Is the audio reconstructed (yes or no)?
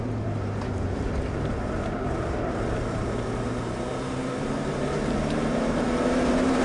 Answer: yes